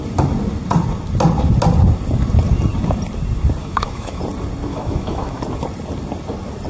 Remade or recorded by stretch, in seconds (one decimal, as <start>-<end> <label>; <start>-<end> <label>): 0.0-3.6 recorded; 3.6-4.2 remade; 4.2-4.7 recorded; 4.7-5.4 remade; 5.4-6.7 recorded